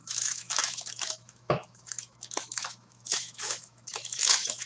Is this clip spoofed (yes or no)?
yes